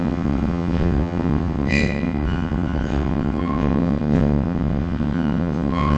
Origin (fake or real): fake